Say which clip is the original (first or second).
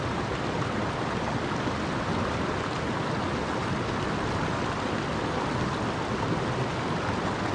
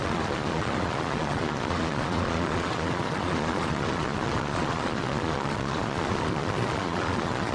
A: first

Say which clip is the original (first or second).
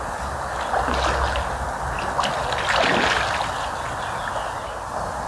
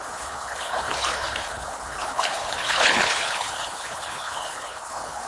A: first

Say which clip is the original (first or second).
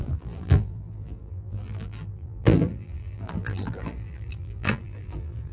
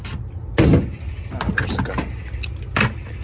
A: second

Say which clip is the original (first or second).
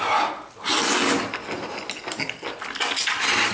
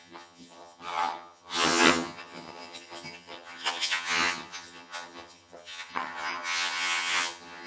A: first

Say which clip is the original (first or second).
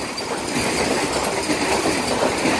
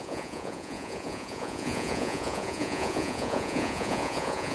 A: first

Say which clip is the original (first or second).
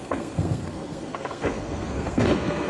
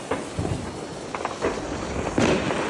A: second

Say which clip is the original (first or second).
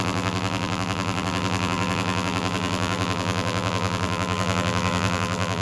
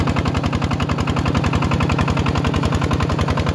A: second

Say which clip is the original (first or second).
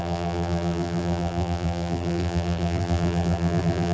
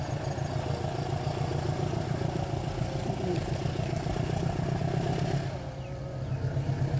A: second